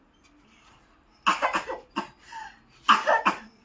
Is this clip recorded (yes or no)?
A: yes